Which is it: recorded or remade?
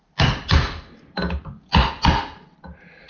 recorded